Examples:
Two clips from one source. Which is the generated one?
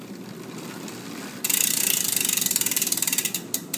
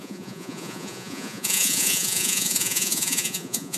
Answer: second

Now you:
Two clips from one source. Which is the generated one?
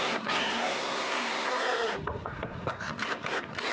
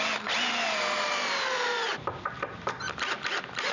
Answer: first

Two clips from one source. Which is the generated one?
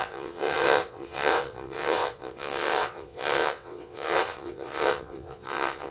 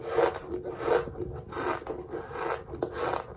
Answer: first